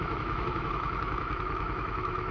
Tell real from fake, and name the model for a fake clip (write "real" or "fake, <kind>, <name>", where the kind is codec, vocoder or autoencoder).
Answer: fake, autoencoder, DAC-VAE